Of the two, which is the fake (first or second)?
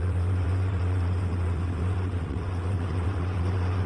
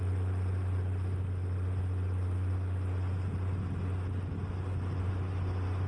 first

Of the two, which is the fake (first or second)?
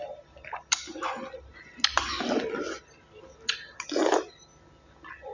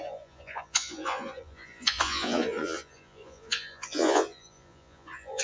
second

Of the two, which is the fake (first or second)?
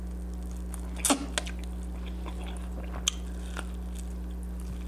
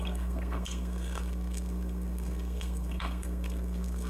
second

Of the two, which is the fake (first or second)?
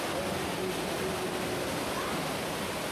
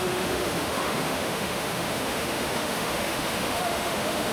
second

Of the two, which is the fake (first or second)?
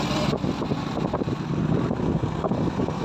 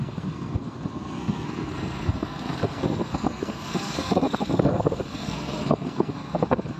second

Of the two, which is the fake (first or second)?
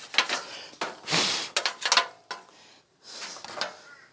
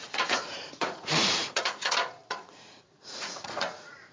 second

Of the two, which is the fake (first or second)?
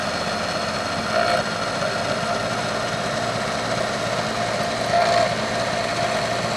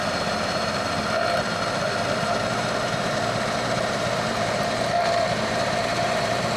second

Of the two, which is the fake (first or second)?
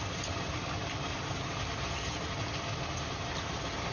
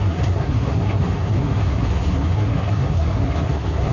second